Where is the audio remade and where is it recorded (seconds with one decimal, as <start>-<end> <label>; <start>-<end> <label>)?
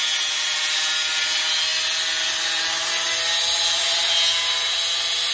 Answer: 0.0-5.3 recorded